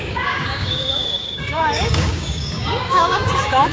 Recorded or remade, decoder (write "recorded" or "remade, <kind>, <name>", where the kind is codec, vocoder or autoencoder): remade, codec, DAC